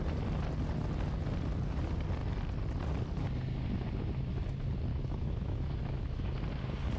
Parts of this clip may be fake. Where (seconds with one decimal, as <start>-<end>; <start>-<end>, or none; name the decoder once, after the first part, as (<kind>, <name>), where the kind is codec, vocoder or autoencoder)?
4.9-6.3 (autoencoder, DAC-VAE)